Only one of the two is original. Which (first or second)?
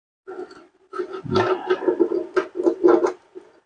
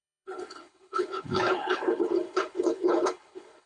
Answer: first